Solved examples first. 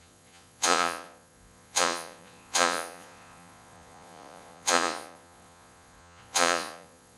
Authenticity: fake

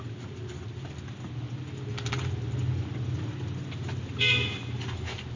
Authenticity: real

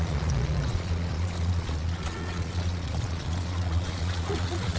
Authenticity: fake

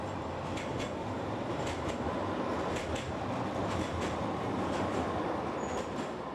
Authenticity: real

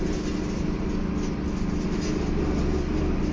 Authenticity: real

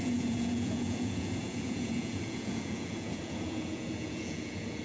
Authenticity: fake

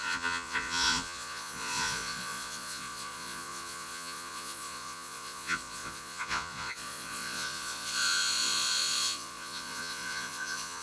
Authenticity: fake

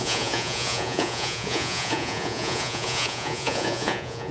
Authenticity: fake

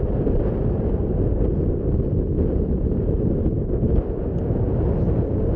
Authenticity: real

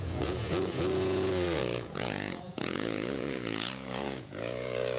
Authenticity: fake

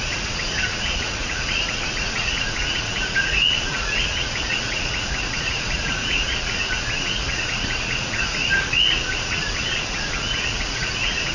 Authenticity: fake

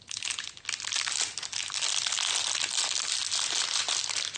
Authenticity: real